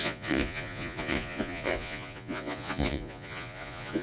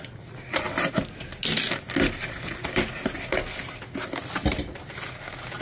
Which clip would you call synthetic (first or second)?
first